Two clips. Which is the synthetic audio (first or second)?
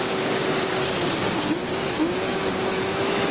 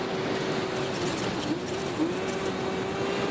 first